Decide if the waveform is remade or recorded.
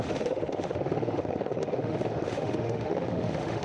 remade